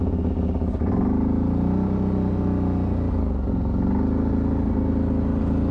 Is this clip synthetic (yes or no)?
no